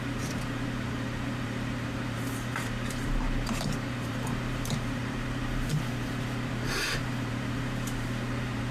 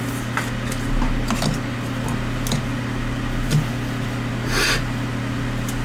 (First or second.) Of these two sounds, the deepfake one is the first